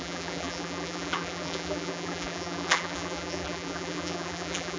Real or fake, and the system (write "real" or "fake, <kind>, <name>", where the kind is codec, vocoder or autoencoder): fake, vocoder, BigVGAN v2